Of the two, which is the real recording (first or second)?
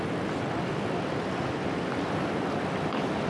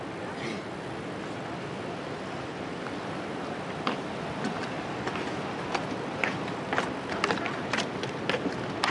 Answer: second